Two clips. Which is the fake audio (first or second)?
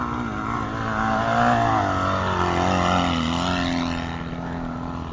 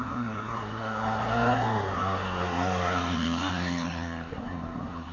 second